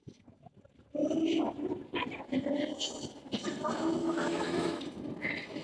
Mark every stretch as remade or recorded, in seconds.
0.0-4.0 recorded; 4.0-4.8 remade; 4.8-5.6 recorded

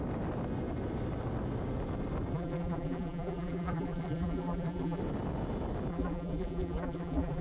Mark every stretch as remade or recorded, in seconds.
0.0-2.3 recorded; 2.3-5.0 remade; 5.0-5.9 recorded; 5.9-7.4 remade

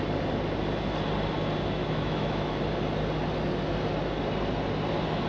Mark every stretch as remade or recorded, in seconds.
0.0-1.8 recorded; 1.8-2.6 remade; 2.6-5.3 recorded

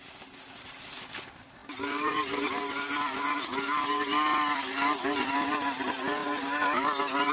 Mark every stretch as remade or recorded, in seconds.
0.0-7.3 recorded